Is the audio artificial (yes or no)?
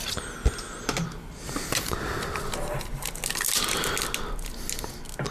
no